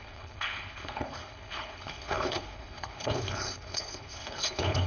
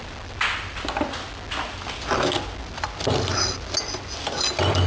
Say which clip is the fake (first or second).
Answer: first